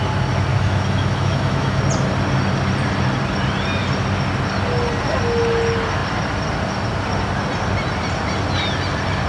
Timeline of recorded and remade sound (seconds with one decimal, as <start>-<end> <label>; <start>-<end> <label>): 0.0-0.5 recorded; 0.5-1.8 remade; 1.8-9.3 recorded